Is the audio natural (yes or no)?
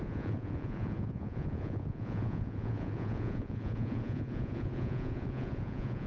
no